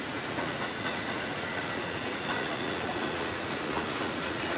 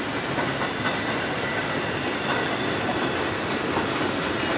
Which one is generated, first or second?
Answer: first